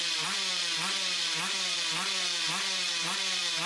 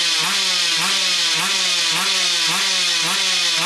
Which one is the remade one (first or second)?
first